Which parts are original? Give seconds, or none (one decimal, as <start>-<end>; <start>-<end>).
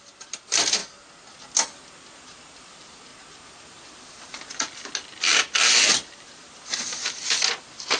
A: 0.8-2.0; 3.1-5.1